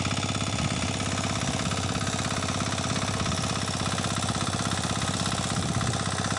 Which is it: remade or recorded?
recorded